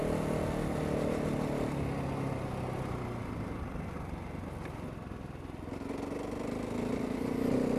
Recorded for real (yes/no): yes